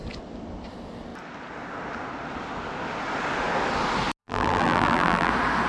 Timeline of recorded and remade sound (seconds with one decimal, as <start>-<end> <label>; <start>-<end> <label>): 0.0-4.2 recorded; 4.2-5.3 remade; 5.3-5.7 recorded